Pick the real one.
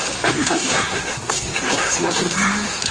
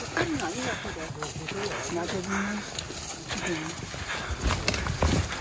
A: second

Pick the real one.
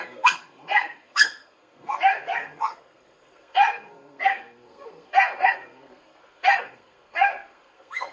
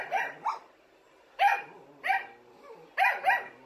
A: second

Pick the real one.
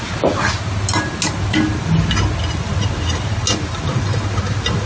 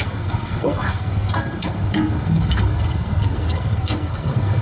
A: first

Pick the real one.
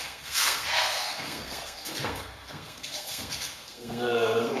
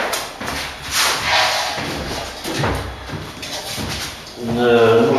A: second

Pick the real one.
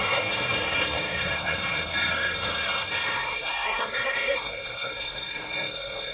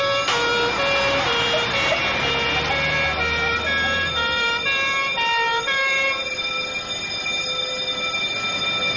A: second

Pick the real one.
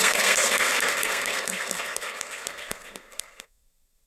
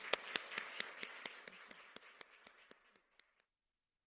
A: second